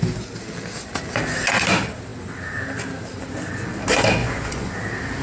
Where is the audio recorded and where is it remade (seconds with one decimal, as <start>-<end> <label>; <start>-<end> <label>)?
0.0-4.2 recorded; 4.2-4.7 remade; 4.7-5.2 recorded